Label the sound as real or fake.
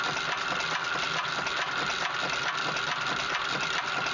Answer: real